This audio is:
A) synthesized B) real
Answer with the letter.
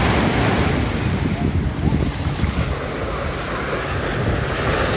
B